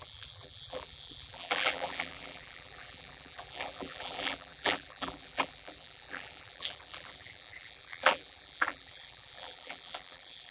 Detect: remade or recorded remade